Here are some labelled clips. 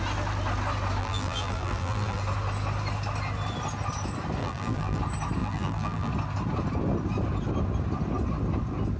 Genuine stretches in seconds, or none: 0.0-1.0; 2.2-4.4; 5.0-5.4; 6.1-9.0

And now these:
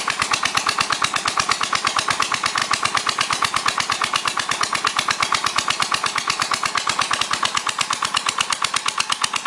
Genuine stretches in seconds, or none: 0.0-9.5